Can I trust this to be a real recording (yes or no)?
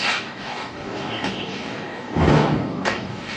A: no